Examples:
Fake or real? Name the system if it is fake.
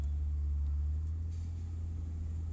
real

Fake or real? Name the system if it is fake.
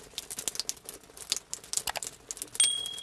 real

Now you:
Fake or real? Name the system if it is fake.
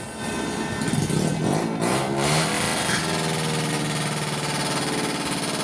real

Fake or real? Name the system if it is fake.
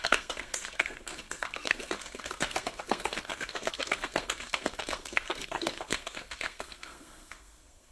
fake, codec, SNAC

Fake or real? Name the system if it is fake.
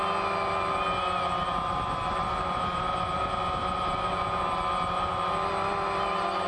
real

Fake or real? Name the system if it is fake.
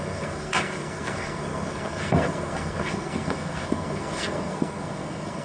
fake, codec, SNAC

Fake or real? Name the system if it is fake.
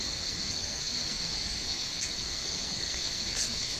fake, codec, SNAC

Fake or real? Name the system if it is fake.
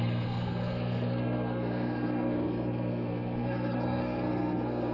fake, codec, SNAC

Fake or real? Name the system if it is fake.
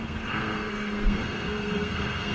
fake, codec, SNAC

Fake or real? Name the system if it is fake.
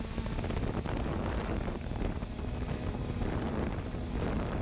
real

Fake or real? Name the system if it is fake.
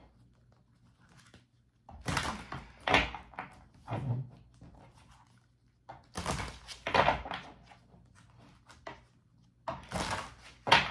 real